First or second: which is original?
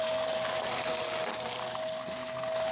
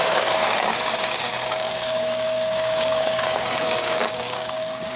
first